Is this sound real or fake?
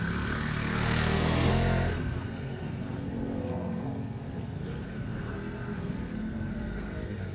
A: fake